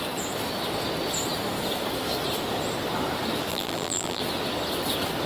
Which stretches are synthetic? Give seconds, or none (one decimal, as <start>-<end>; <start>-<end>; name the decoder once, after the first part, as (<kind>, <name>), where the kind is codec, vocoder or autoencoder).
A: 3.5-4.2 (vocoder, BigVGAN v2)